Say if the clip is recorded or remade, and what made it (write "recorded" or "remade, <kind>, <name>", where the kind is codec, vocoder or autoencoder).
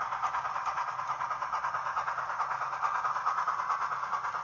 recorded